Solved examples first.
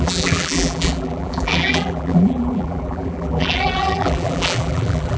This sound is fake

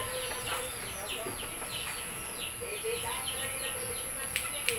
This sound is real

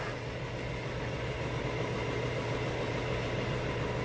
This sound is real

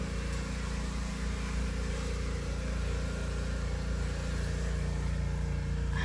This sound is real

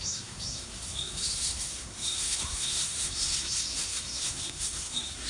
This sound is fake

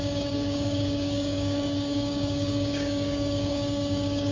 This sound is fake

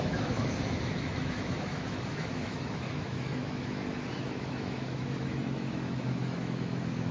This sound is fake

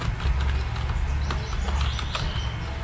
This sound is real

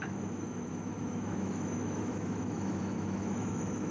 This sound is fake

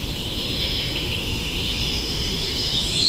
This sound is fake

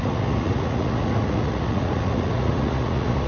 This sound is fake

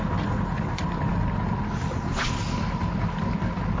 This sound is real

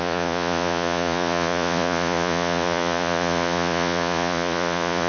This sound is fake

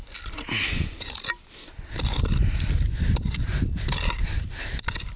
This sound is real